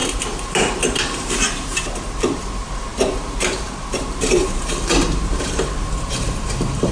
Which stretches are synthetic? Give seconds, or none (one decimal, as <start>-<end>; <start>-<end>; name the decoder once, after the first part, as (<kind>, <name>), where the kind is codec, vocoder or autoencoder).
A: 0.0-6.9 (vocoder, BigVGAN v2)